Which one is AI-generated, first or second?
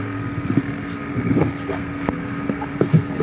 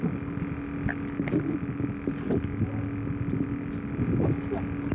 first